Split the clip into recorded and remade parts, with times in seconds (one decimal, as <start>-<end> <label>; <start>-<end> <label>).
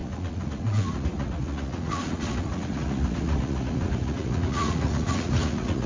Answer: 0.0-5.9 remade